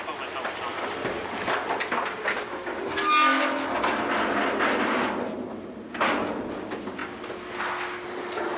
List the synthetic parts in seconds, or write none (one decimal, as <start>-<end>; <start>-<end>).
none